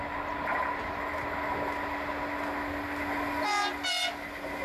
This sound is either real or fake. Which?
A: real